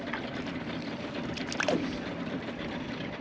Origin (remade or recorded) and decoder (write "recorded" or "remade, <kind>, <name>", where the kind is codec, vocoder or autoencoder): recorded